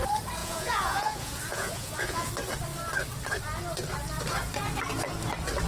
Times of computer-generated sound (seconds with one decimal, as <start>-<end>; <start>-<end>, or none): 0.4-2.3

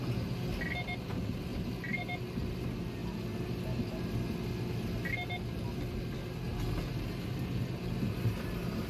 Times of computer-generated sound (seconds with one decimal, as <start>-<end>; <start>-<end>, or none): none

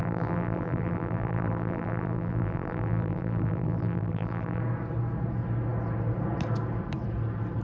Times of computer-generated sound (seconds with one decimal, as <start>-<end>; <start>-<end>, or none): 0.0-4.6

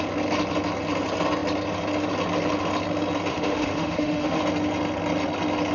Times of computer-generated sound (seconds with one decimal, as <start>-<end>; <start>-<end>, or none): 3.3-4.4